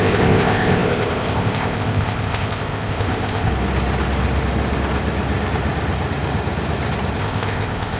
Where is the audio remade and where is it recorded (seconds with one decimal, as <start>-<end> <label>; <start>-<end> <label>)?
0.0-3.5 remade; 3.5-7.2 recorded; 7.2-8.0 remade